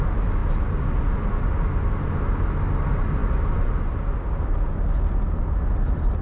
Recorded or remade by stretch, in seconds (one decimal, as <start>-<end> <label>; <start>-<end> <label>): 0.0-6.2 recorded